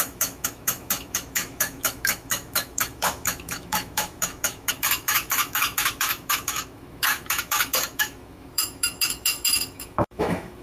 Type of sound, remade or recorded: remade